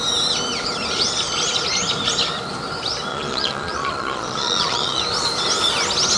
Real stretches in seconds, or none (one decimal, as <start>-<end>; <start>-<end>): 0.0-3.1; 5.0-6.2